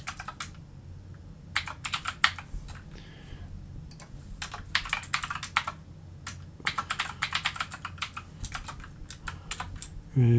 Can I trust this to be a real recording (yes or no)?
yes